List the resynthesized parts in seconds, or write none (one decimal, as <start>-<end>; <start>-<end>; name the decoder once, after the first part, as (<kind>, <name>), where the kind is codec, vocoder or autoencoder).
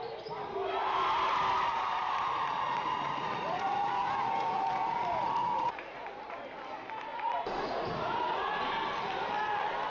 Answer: 1.7-6.2 (vocoder, Vocos); 7.1-8.2